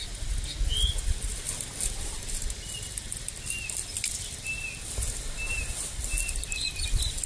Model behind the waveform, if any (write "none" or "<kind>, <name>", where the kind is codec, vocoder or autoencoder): none